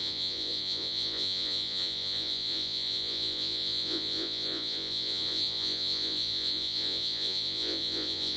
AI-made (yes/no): yes